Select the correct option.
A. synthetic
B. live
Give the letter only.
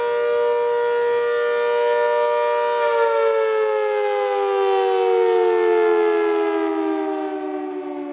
B